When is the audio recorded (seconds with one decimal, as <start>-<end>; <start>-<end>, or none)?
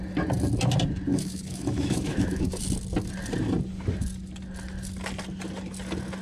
0.0-1.1; 2.5-6.2